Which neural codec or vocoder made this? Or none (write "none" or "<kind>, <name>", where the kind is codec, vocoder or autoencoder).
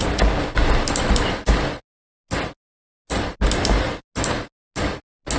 none